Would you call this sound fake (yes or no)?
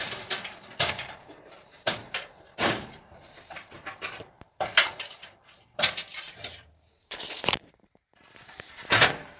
yes